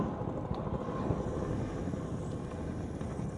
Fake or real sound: real